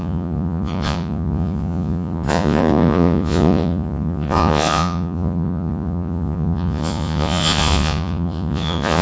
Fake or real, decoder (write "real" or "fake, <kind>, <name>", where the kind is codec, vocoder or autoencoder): fake, vocoder, Vocos